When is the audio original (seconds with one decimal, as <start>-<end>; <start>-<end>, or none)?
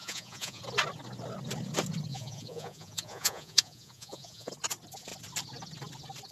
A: 0.6-2.1; 4.5-6.3